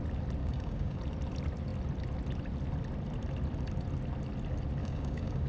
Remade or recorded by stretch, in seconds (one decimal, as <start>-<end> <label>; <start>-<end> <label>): 0.0-0.4 recorded; 0.4-1.0 remade; 1.0-4.8 recorded; 4.8-5.5 remade